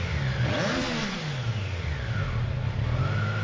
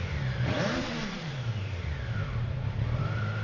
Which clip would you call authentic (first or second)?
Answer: first